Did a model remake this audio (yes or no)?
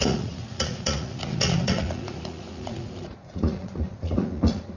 yes